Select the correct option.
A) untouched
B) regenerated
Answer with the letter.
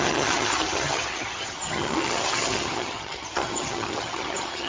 B